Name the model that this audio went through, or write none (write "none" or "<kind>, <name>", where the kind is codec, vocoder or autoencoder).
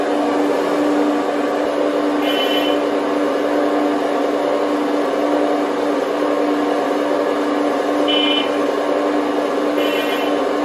none